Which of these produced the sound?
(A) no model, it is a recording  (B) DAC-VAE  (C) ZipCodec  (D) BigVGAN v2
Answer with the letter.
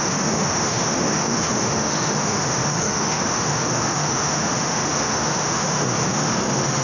B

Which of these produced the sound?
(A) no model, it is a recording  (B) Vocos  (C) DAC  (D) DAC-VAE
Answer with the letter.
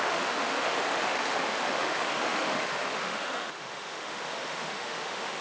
D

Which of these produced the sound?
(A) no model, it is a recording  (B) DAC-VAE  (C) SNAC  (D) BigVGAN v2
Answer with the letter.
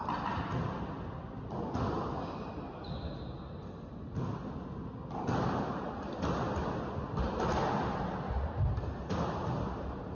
A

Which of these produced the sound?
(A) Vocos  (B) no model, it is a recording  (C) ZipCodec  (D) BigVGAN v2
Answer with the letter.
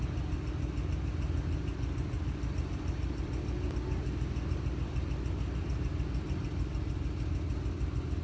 B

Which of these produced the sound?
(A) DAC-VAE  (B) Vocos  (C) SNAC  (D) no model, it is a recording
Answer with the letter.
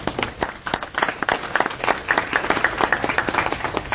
D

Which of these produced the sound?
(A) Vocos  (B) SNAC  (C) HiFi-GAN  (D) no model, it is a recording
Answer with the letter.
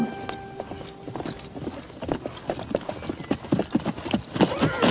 D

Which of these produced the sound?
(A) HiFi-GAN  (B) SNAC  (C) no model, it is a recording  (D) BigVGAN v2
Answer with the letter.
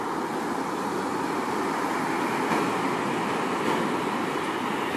C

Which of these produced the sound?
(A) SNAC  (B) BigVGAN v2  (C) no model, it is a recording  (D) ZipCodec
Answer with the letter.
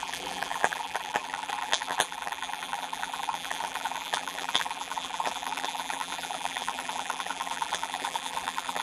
B